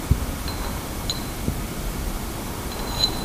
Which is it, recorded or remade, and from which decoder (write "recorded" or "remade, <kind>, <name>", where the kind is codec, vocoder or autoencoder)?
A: recorded